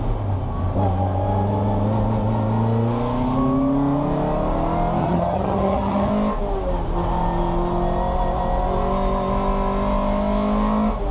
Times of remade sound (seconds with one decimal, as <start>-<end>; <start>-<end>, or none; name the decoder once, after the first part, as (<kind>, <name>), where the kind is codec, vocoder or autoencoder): 5.0-6.1 (vocoder, HiFi-GAN)